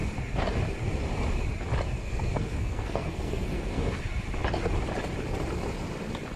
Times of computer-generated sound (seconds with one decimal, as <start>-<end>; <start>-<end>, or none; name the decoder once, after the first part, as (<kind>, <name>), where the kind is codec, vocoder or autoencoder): 2.0-4.0 (codec, SNAC)